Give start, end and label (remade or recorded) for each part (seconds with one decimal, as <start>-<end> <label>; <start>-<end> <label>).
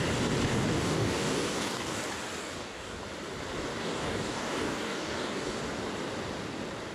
0.0-0.5 recorded; 0.5-2.0 remade; 2.0-2.4 recorded; 2.4-3.0 remade; 3.0-3.8 recorded; 3.8-5.6 remade; 5.6-6.9 recorded